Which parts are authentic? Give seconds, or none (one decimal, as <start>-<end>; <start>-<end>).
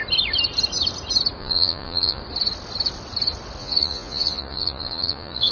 0.0-1.4; 2.2-3.6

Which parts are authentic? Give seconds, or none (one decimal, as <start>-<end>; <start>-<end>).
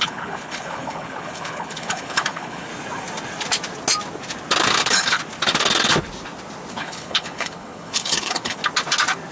2.7-4.8; 5.2-6.7; 8.6-9.3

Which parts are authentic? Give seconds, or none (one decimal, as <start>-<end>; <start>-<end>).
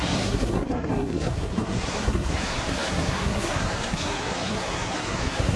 none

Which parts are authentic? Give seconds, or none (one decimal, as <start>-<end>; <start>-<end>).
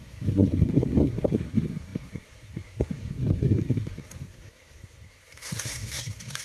none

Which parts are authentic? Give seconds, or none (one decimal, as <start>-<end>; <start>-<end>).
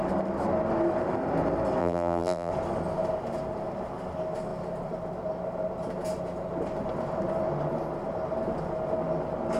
0.0-1.8; 2.5-9.6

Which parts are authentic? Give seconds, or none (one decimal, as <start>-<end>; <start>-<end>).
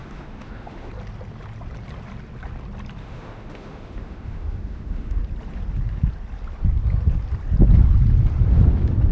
0.9-3.0; 5.2-9.1